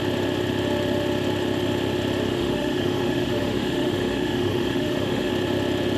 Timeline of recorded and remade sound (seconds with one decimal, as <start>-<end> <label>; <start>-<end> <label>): 0.0-2.3 recorded; 2.3-5.3 remade; 5.3-6.0 recorded